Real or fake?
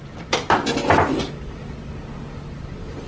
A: real